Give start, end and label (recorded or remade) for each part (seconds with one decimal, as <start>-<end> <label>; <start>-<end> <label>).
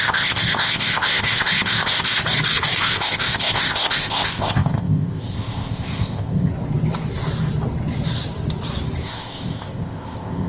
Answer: 0.0-2.2 remade; 2.2-2.8 recorded; 2.8-6.5 remade; 6.5-9.0 recorded; 9.0-10.5 remade